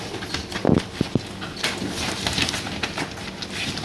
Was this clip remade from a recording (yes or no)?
no